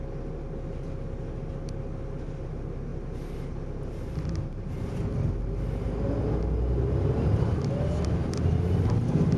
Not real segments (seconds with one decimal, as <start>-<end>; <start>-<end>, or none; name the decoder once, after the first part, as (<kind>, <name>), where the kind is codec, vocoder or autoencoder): none